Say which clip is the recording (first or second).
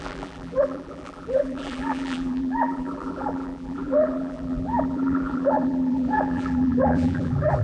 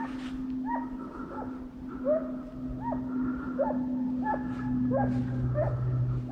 second